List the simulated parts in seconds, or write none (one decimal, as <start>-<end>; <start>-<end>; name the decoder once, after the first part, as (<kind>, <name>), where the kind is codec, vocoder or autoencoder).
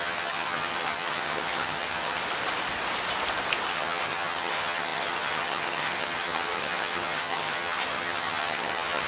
0.0-2.2 (vocoder, HiFi-GAN); 3.7-9.1